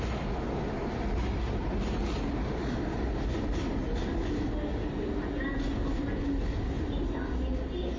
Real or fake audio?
real